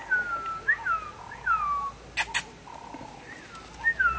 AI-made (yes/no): no